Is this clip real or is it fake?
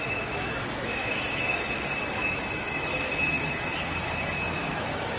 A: fake